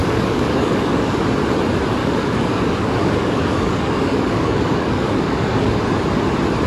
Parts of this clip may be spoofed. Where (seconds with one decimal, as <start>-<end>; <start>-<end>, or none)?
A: 0.0-1.2; 2.0-5.8